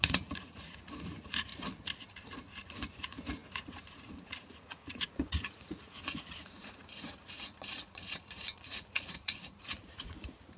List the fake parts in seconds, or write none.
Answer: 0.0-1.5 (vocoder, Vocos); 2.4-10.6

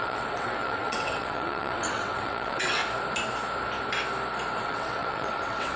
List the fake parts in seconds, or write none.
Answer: 0.0-2.8 (vocoder, WaveNeXt); 4.6-5.8

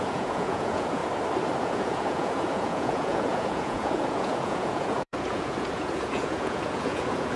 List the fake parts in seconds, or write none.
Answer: 0.0-1.0 (vocoder, Vocos); 1.6-7.4